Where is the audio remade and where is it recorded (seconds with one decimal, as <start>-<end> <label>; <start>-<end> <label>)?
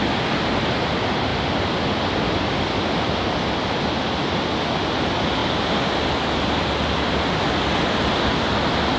0.0-9.0 recorded